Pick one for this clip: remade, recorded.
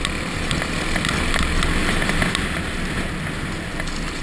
recorded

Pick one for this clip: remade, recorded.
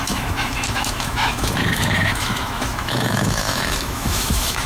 remade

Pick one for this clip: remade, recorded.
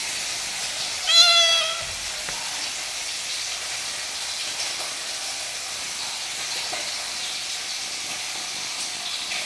recorded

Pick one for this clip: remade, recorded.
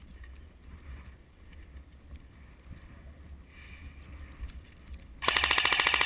recorded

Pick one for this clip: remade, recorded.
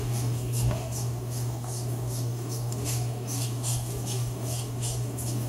remade